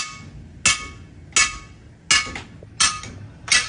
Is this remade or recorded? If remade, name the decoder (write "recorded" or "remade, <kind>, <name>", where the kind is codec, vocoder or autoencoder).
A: recorded